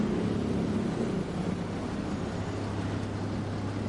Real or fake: real